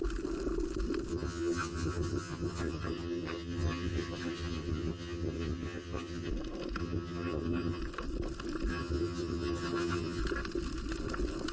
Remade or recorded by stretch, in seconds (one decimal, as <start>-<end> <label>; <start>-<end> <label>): 0.0-1.1 recorded; 1.1-6.3 remade; 6.3-6.8 recorded; 6.8-7.8 remade; 7.8-8.7 recorded; 8.7-10.2 remade; 10.2-11.5 recorded